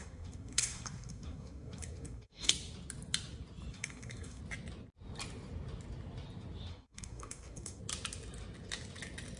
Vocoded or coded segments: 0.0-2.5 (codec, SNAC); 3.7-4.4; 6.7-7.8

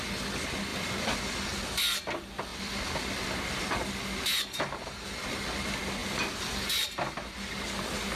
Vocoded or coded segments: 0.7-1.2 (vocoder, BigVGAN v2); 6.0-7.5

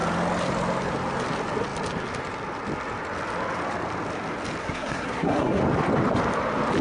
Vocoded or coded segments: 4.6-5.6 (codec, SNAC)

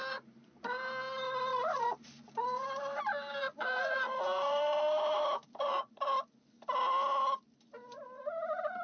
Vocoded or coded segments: 0.0-0.9 (vocoder, BigVGAN v2); 1.5-6.0